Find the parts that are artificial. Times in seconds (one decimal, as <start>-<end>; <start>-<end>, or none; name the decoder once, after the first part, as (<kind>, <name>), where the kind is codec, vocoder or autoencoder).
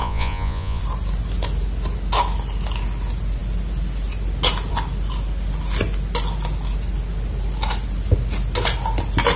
0.0-0.8 (vocoder, Vocos)